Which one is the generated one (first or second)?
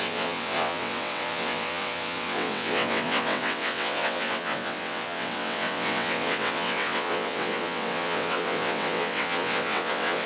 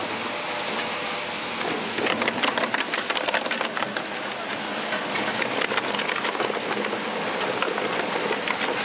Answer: first